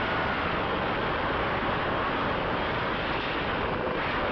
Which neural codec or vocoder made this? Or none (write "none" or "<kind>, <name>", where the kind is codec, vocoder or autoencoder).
none